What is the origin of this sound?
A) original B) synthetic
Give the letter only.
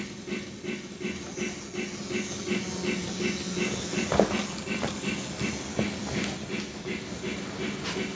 A